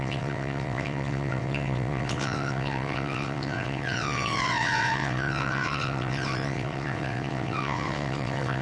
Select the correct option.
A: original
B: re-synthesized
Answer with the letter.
B